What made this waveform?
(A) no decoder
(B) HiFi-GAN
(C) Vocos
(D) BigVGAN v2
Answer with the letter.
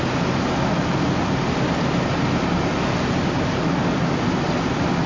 A